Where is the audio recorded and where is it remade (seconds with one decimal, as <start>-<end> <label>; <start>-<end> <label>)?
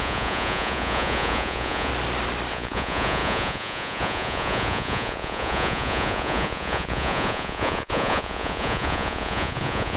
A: 0.0-1.9 remade; 1.9-2.5 recorded; 2.5-10.0 remade